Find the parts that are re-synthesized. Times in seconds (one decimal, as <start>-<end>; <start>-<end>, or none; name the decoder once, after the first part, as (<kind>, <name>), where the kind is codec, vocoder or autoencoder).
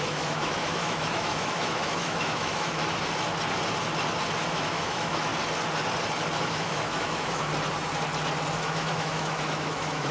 0.0-2.8 (autoencoder, DAC-VAE); 4.5-5.3; 6.4-7.5; 8.5-10.1